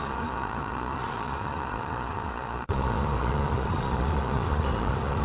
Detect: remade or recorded remade